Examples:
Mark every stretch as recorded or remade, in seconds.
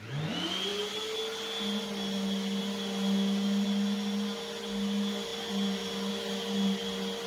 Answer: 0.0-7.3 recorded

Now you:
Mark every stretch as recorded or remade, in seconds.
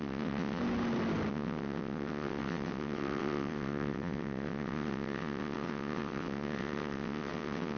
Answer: 0.0-0.6 remade; 0.6-1.3 recorded; 1.3-7.8 remade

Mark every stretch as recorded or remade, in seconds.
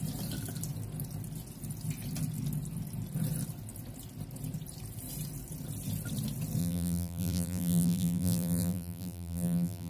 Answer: 0.0-6.6 recorded; 6.6-9.9 remade